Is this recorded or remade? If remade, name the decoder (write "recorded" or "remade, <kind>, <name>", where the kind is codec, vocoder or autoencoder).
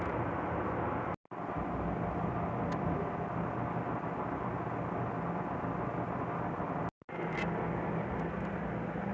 recorded